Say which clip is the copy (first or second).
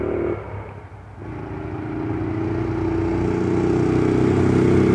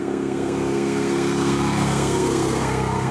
second